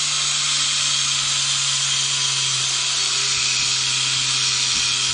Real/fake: real